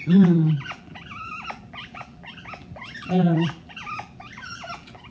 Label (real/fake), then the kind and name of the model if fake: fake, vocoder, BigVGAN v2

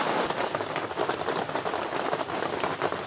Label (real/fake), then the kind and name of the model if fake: real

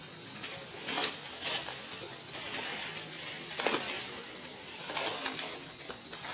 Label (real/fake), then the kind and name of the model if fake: real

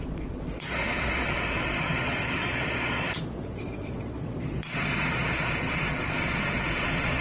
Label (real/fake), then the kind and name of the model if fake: fake, vocoder, Vocos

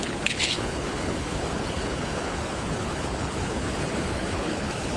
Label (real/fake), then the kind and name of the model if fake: fake, codec, HILCodec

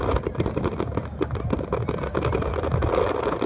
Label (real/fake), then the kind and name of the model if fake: real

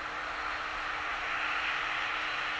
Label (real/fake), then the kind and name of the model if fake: real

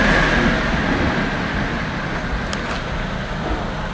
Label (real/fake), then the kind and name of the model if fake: real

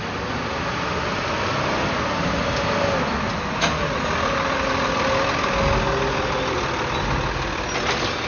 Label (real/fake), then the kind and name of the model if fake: real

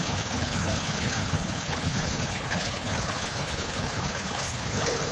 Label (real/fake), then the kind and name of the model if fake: fake, codec, HILCodec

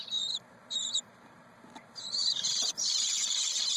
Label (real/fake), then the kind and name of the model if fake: fake, vocoder, BigVGAN v2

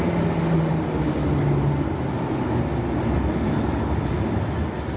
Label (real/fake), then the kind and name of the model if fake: real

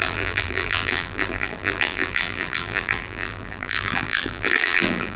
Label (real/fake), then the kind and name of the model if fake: fake, vocoder, BigVGAN v2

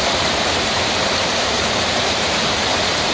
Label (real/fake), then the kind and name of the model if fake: fake, vocoder, BigVGAN v2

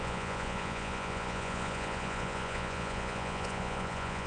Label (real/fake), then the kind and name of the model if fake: fake, vocoder, Vocos